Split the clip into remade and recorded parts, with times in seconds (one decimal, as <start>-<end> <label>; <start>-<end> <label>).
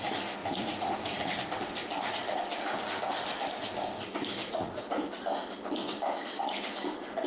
0.0-0.4 recorded; 0.4-1.3 remade; 1.3-4.4 recorded; 4.4-5.0 remade; 5.0-7.3 recorded